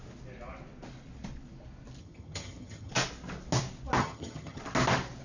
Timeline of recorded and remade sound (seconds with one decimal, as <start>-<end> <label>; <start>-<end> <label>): 0.0-2.0 recorded; 2.0-2.9 remade; 2.9-4.0 recorded; 4.0-4.6 remade; 4.6-5.2 recorded